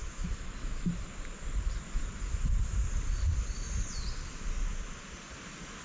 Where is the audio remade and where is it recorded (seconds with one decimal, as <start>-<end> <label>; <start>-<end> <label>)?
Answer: 0.0-1.0 remade; 1.0-5.8 recorded